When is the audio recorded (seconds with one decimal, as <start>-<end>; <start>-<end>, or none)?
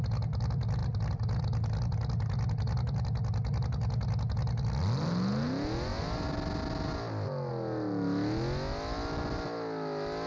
0.0-10.3